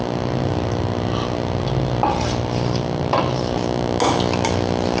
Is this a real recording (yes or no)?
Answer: yes